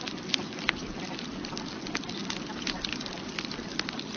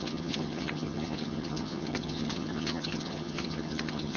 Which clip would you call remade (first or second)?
second